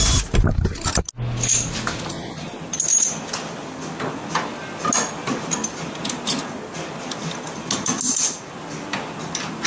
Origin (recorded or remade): recorded